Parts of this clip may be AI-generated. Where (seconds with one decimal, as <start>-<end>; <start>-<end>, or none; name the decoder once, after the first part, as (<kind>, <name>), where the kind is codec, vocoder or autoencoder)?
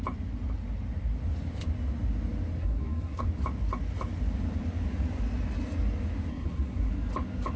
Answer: 2.6-3.2 (codec, SNAC); 6.3-6.9